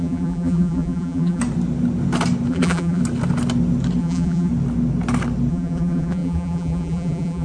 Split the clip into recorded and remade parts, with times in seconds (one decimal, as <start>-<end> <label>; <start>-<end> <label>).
0.0-1.4 remade; 1.4-2.5 recorded; 2.5-3.0 remade; 3.0-4.0 recorded; 4.0-4.5 remade; 4.5-5.5 recorded; 5.5-7.4 remade